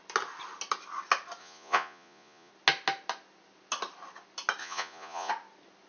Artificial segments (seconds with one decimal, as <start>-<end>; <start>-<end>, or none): 1.4-2.5; 4.6-5.3